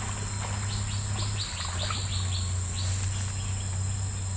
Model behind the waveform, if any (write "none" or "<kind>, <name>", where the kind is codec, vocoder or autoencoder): none